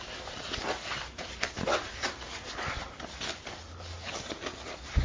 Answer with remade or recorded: recorded